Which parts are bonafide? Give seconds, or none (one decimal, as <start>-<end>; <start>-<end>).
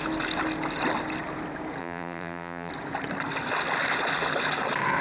0.0-1.8; 2.7-5.0